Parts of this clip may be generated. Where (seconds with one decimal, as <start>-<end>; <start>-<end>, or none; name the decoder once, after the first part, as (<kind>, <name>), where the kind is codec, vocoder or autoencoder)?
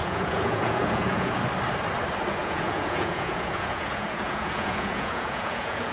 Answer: 0.0-1.4 (vocoder, Vocos); 2.4-5.9